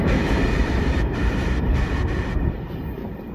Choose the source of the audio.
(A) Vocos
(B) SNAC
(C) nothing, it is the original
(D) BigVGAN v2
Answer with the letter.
D